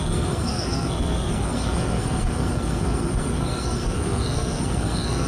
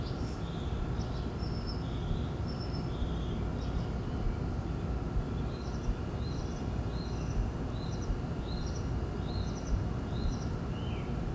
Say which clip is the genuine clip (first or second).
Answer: second